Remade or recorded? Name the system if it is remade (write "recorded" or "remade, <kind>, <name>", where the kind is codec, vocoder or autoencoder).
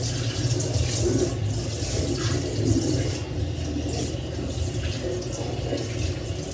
recorded